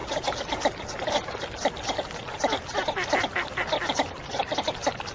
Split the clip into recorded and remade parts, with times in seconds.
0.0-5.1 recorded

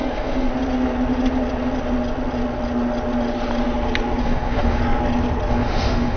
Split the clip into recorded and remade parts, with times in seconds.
0.0-0.5 remade; 0.5-4.2 recorded; 4.2-4.8 remade; 4.8-5.5 recorded; 5.5-6.2 remade